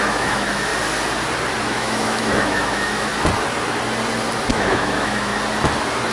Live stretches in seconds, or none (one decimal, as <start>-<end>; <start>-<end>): 0.7-1.6; 3.1-4.5; 5.3-6.1